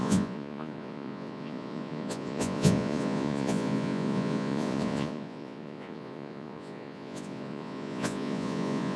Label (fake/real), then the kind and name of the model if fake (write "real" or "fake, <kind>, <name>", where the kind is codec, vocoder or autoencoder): fake, vocoder, Vocos